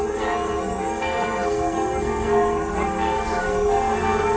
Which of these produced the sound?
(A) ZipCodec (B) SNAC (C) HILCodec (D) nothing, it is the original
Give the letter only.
B